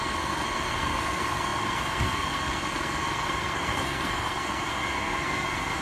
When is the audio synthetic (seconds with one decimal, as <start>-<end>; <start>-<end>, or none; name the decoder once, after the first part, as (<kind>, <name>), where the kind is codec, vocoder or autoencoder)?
0.0-5.8 (codec, SNAC)